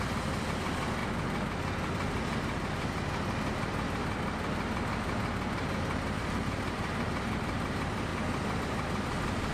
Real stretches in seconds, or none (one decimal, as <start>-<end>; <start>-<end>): 1.0-6.2; 8.1-8.6

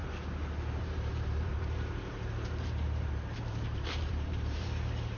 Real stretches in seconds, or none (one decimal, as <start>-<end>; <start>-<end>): 0.0-0.8